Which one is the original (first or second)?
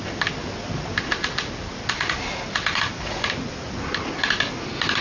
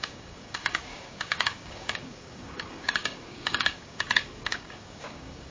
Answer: first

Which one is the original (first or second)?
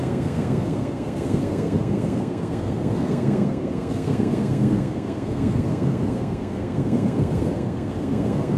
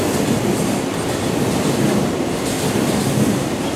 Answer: second